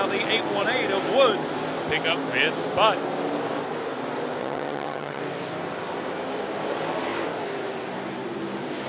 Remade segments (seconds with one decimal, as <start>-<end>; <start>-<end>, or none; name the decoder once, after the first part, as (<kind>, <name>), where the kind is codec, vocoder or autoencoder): 4.4-5.2 (vocoder, HiFi-GAN)